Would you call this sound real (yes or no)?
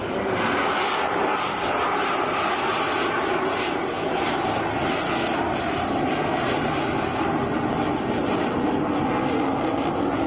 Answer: yes